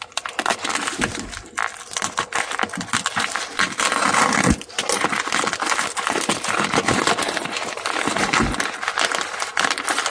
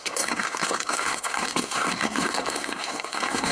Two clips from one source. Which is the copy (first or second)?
second